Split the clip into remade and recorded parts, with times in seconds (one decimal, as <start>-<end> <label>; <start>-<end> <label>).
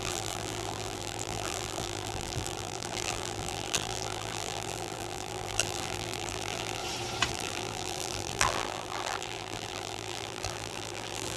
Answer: 0.0-6.8 remade; 6.8-7.3 recorded; 7.3-11.4 remade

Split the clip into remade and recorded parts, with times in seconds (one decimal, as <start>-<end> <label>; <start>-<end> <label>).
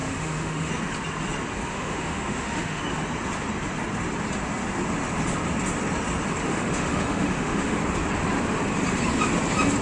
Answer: 0.0-0.7 remade; 0.7-1.7 recorded; 1.7-2.8 remade; 2.8-6.5 recorded; 6.5-7.8 remade; 7.8-9.8 recorded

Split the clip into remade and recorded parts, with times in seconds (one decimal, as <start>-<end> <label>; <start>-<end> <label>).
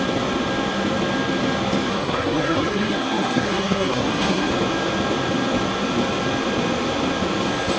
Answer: 0.0-1.9 recorded; 1.9-4.5 remade; 4.5-7.8 recorded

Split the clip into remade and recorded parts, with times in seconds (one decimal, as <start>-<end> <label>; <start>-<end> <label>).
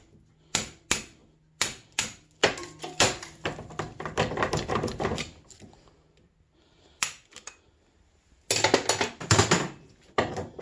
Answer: 0.0-10.6 recorded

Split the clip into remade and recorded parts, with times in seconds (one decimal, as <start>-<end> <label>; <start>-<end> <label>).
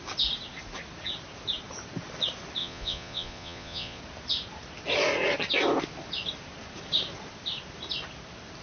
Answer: 0.0-2.6 recorded; 2.6-4.0 remade; 4.0-8.6 recorded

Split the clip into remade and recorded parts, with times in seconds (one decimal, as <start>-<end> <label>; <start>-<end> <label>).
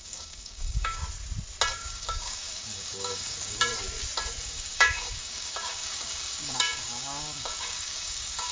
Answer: 0.0-1.0 remade; 1.0-1.7 recorded; 1.7-3.7 remade; 3.7-4.4 recorded; 4.4-8.5 remade